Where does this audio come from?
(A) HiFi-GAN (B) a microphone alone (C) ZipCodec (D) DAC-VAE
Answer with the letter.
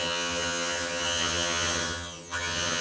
A